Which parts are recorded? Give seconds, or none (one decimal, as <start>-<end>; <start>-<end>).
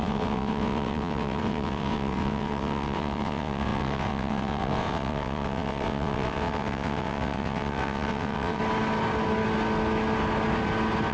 8.6-11.1